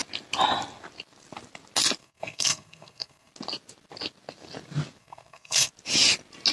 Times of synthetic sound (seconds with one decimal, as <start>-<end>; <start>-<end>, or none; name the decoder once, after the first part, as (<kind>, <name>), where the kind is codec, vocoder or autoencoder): 2.0-3.3 (codec, SNAC); 5.0-5.7

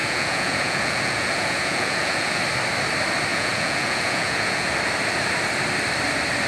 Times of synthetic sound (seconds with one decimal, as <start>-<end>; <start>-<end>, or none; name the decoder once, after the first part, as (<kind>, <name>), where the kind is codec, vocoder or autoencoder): 0.0-2.4 (vocoder, Vocos); 3.3-4.7